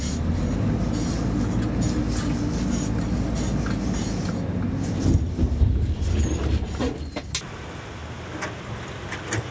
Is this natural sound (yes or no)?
yes